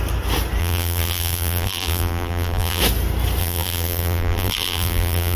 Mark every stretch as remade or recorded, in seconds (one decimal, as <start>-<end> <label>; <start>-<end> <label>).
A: 0.0-0.6 recorded; 0.6-2.8 remade; 2.8-3.4 recorded; 3.4-5.4 remade